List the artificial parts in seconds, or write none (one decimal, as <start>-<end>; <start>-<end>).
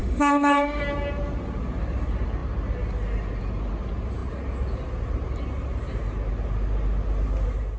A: 0.0-0.8